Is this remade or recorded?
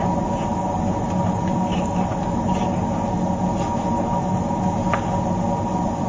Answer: recorded